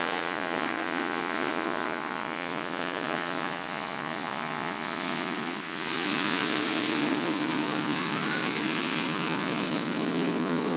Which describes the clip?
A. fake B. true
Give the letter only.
A